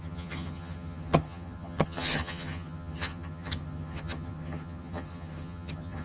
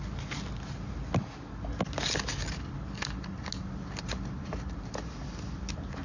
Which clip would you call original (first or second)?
second